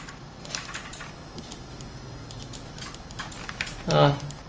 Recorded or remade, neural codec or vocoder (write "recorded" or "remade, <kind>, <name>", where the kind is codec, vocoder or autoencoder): recorded